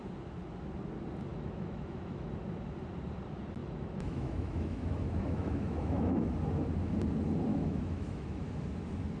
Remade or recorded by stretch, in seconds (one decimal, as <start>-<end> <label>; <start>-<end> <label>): 0.0-1.3 recorded; 1.3-2.3 remade; 2.3-3.6 recorded; 3.6-6.3 remade; 6.3-7.5 recorded; 7.5-8.4 remade; 8.4-9.2 recorded